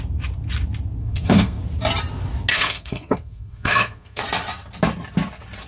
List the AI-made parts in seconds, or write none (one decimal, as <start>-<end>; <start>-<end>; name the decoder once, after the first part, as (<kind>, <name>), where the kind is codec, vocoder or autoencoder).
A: 1.0-1.6 (codec, SNAC); 2.5-4.2